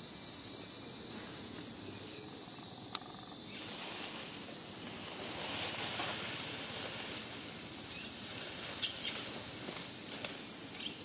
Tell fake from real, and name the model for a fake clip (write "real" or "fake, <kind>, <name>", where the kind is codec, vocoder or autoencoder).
real